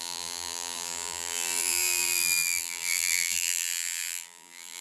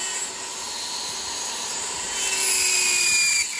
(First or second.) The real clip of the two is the second